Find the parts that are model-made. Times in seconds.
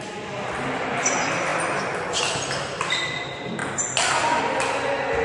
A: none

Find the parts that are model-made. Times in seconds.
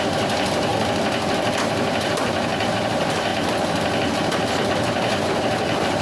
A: 0.0-0.7 (vocoder, BigVGAN v2); 1.6-3.3; 4.7-6.0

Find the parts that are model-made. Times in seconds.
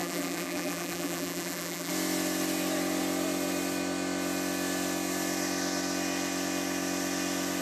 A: 0.0-1.9 (vocoder, BigVGAN v2)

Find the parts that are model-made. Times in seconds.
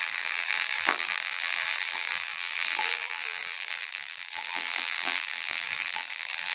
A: 0.0-6.5 (vocoder, BigVGAN v2)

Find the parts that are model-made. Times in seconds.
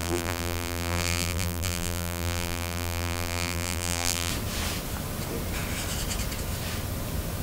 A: 0.0-4.3 (vocoder, BigVGAN v2)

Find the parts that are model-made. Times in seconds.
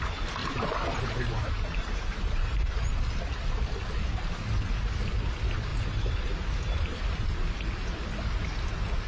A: 0.4-2.9 (vocoder, BigVGAN v2); 5.7-7.0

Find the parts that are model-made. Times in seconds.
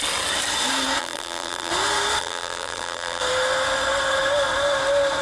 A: 1.0-1.7 (vocoder, BigVGAN v2); 2.2-3.2